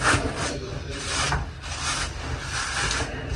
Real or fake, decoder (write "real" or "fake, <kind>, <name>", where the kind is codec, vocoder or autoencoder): real